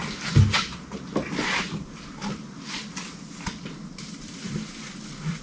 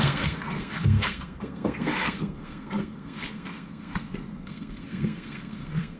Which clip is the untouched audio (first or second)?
first